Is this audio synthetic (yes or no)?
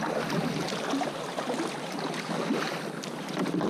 no